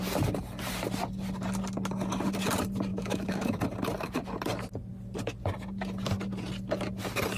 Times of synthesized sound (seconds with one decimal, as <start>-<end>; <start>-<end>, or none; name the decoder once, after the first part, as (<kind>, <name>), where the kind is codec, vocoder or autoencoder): 2.9-3.6 (autoencoder, DAC-VAE)